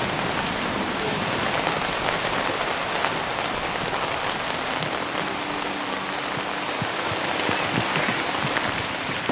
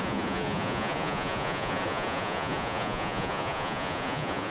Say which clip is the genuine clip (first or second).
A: first